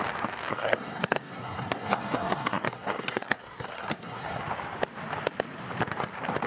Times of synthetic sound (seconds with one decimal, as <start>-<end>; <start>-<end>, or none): 0.5-4.4